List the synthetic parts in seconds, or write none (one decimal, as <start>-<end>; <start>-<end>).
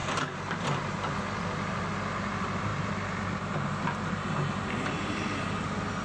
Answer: none